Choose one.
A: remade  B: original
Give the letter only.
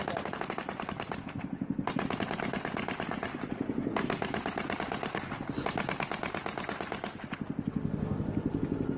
B